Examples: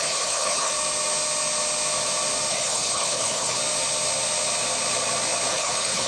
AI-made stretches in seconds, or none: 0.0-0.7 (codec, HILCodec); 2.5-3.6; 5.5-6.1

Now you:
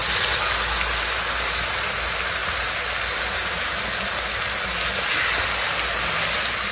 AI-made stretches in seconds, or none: none

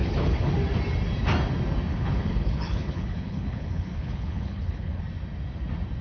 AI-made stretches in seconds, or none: 0.0-0.5 (codec, HILCodec); 1.9-5.0

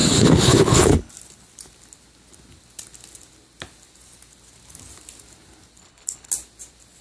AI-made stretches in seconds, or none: 0.0-1.1 (codec, HILCodec); 5.8-6.3

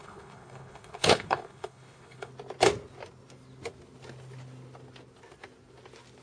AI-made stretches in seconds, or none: 0.0-2.3 (codec, HILCodec)

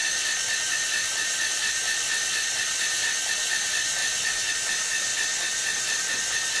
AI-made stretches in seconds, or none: none

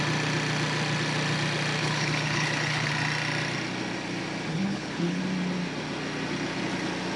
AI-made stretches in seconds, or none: 1.8-2.9 (codec, HILCodec); 4.5-5.2

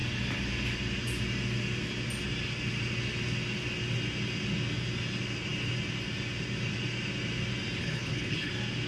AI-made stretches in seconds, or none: 7.8-8.5 (codec, HILCodec)